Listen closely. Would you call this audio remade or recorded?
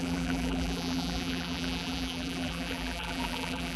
remade